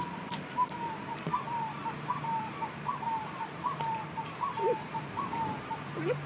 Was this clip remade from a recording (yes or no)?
yes